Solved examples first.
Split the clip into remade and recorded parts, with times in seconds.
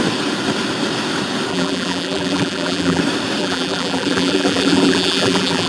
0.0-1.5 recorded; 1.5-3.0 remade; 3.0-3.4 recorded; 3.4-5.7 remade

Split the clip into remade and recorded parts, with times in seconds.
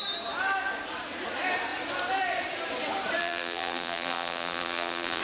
0.0-3.2 recorded; 3.2-5.2 remade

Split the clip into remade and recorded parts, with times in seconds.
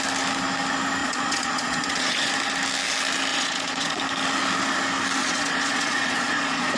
0.0-1.0 recorded; 1.0-2.3 remade; 2.3-3.3 recorded; 3.3-4.0 remade; 4.0-5.2 recorded; 5.2-6.8 remade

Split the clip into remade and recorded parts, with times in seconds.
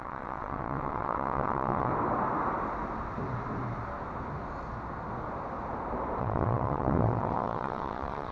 0.0-1.9 remade; 1.9-6.2 recorded; 6.2-8.3 remade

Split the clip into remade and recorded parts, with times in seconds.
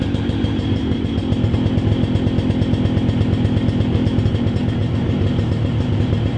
0.0-1.2 remade; 1.2-4.3 recorded; 4.3-6.4 remade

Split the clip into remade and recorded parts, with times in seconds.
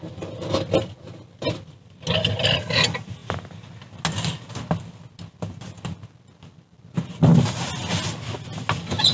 0.0-9.1 recorded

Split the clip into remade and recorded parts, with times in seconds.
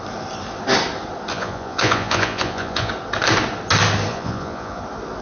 0.0-1.3 recorded; 1.3-2.9 remade; 2.9-4.1 recorded; 4.1-4.8 remade; 4.8-5.2 recorded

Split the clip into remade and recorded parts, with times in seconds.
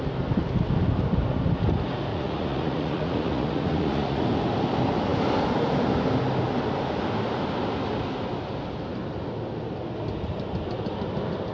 0.0-2.1 recorded; 2.1-4.2 remade; 4.2-11.5 recorded